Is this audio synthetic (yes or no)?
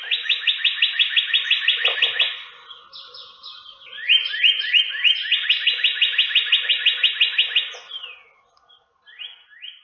no